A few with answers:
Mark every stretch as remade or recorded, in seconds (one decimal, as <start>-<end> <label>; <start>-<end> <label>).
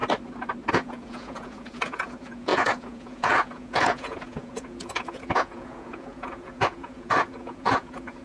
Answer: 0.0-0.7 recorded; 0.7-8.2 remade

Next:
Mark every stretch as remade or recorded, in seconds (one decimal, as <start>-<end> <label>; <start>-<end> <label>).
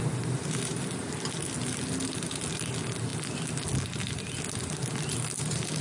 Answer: 0.0-5.8 recorded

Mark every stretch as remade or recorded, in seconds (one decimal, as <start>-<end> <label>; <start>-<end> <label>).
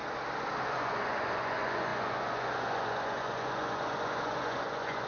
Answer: 0.0-0.6 recorded; 0.6-5.1 remade